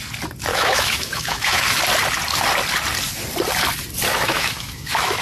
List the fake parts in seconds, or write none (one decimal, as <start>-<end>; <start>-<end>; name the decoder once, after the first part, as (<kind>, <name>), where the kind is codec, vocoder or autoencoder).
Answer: 0.5-1.8 (autoencoder, DAC-VAE); 4.1-5.2

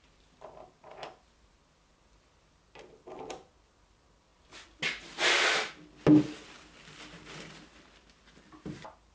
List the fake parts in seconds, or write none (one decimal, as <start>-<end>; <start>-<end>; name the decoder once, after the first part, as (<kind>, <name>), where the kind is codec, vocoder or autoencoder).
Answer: none

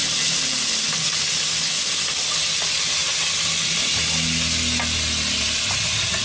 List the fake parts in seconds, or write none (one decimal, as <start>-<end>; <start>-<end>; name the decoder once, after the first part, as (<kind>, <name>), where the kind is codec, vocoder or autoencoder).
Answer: 0.0-0.7 (vocoder, BigVGAN v2)

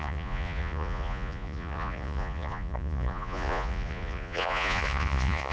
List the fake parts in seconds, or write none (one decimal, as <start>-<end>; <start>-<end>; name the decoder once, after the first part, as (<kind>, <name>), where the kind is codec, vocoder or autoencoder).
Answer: 0.0-5.5 (vocoder, Vocos)

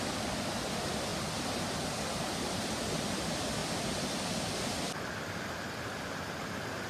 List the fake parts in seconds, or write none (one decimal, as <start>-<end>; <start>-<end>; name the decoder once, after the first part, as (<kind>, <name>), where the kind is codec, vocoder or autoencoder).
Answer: none